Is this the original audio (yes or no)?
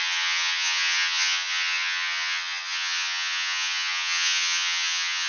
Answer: no